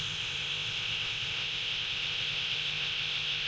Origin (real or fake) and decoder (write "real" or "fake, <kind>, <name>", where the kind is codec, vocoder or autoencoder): fake, codec, ZipCodec